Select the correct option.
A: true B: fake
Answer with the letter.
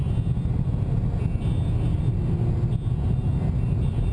A